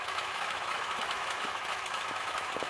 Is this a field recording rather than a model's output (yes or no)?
no